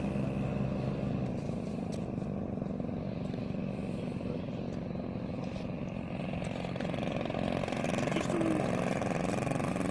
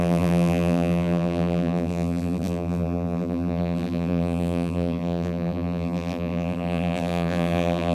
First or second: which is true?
first